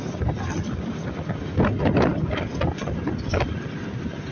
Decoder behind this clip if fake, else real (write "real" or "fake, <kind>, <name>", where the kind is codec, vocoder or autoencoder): real